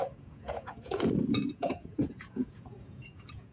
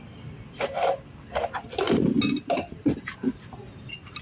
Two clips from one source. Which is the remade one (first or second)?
first